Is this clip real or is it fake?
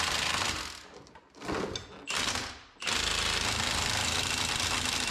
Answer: real